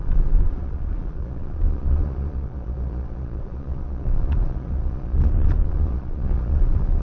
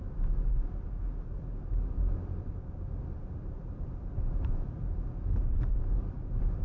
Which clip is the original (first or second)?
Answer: second